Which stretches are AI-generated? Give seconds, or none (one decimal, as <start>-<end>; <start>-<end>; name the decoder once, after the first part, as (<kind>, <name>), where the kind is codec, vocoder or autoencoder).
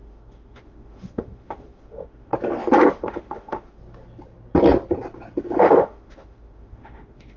0.0-2.3 (autoencoder, DAC-VAE); 2.9-3.8; 5.6-7.4